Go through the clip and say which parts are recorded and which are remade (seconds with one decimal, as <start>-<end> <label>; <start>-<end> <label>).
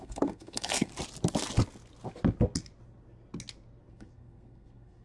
0.0-0.9 remade; 0.9-3.9 recorded; 3.9-5.0 remade